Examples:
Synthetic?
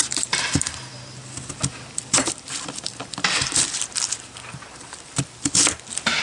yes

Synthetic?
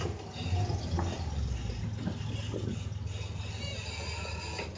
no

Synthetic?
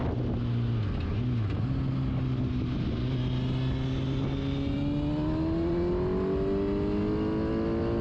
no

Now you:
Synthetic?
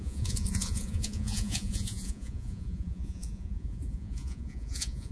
yes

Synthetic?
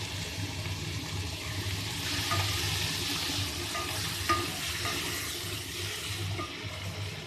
no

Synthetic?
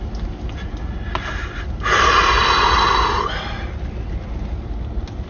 no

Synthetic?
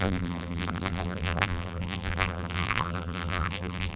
yes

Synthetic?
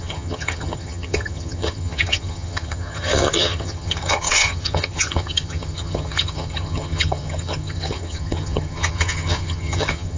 yes